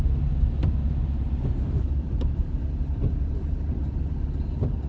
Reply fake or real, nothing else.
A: real